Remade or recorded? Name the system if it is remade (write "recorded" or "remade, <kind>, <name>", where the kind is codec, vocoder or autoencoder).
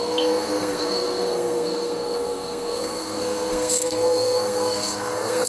remade, codec, SNAC